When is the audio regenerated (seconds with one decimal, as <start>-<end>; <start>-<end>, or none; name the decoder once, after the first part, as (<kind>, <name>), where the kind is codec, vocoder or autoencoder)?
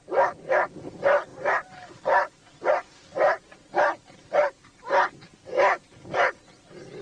none